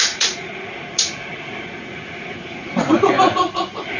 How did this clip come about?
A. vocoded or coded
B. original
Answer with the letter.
A